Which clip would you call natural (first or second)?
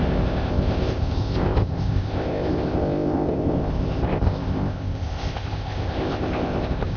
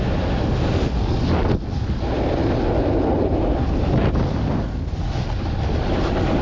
second